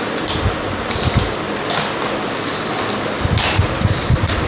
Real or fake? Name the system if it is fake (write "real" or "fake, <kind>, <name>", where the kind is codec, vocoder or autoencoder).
real